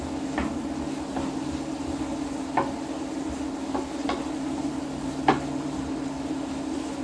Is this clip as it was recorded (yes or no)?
yes